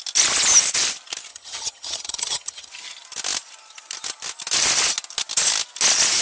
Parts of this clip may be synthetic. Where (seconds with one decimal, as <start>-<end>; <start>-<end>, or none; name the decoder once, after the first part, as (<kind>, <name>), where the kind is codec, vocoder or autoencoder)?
1.3-2.7 (vocoder, HiFi-GAN)